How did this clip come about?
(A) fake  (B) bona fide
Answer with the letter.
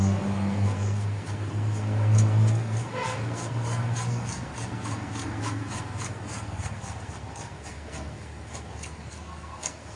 A